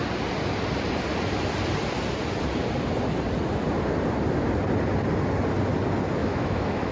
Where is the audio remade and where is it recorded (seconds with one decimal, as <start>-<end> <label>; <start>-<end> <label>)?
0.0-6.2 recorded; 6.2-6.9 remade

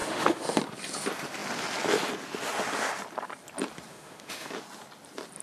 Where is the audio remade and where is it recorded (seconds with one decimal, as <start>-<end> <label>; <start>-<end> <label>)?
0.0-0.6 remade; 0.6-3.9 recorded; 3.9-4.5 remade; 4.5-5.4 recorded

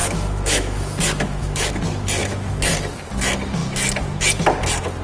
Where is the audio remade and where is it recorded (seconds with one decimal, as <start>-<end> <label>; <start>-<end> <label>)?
0.0-1.7 remade; 1.7-2.2 recorded; 2.2-2.7 remade; 2.7-5.0 recorded

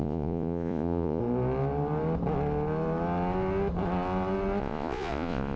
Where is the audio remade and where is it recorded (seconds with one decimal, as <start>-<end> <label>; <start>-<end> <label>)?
0.0-1.2 remade; 1.2-4.6 recorded; 4.6-5.6 remade